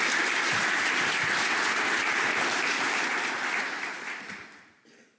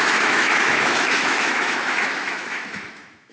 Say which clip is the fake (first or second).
second